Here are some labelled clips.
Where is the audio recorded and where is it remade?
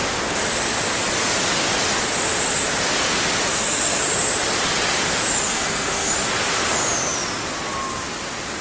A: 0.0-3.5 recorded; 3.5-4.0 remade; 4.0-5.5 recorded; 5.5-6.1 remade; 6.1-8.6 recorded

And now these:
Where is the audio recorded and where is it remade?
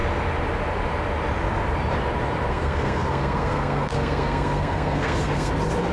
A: 0.0-2.5 recorded; 2.5-5.5 remade; 5.5-5.9 recorded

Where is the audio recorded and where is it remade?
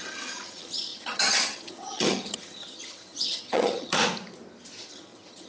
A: 0.0-4.0 remade; 4.0-4.9 recorded; 4.9-5.5 remade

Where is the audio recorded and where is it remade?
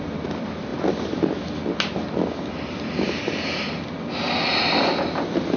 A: 0.0-5.6 recorded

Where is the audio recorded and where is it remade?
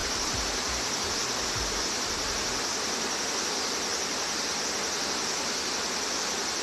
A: 0.0-6.6 recorded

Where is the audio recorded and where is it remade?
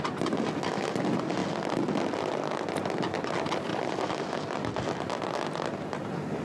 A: 0.0-6.4 recorded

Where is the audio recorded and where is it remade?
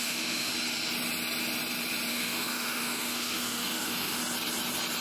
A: 0.0-0.5 remade; 0.5-2.1 recorded; 2.1-4.2 remade; 4.2-5.0 recorded